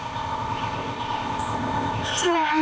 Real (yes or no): no